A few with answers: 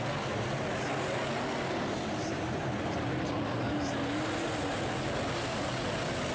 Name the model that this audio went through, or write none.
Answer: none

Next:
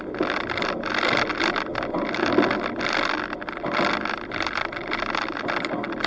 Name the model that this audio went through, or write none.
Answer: none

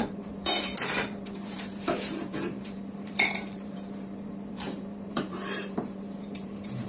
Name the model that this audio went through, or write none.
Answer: vocoder, BigVGAN v2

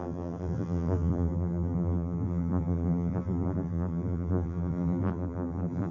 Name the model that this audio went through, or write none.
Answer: vocoder, BigVGAN v2